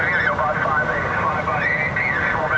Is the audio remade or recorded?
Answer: recorded